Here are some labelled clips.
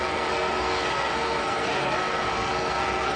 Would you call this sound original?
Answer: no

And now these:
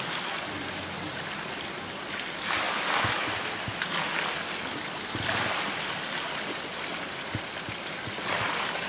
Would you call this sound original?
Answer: yes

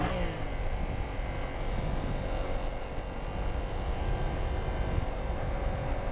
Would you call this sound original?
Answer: yes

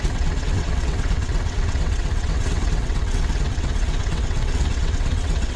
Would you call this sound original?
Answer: no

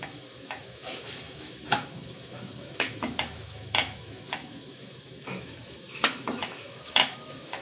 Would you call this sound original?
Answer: no